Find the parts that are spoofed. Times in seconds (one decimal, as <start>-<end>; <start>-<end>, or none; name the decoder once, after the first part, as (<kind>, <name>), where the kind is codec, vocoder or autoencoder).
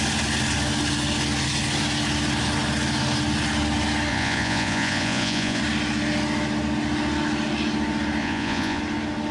4.1-5.6 (vocoder, Vocos); 8.2-8.8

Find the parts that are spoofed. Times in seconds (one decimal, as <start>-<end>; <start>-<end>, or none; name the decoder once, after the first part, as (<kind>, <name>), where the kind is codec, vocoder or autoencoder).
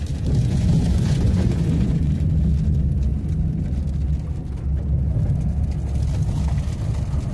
0.4-2.1 (vocoder, Vocos)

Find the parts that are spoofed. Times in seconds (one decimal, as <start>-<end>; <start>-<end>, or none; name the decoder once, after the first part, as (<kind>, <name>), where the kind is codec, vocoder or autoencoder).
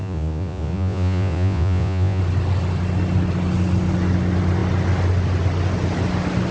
0.0-2.2 (vocoder, Vocos)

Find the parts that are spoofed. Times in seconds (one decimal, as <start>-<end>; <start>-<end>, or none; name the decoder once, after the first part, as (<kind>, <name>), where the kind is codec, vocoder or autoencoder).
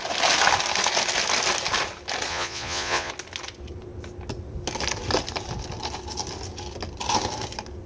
2.3-3.1 (vocoder, Vocos)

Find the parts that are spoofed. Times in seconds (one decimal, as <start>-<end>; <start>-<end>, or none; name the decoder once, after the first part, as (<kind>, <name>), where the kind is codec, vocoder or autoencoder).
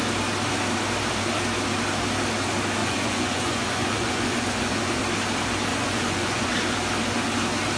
2.8-5.0 (vocoder, Vocos); 5.7-6.5